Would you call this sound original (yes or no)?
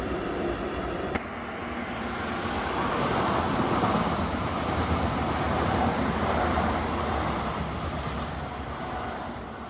yes